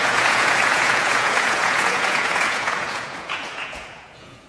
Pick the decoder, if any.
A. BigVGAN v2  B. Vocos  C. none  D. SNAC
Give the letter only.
B